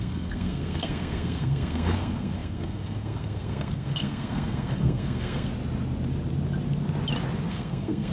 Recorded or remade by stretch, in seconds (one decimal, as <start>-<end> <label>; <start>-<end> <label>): 0.0-5.5 remade; 5.5-7.5 recorded; 7.5-8.1 remade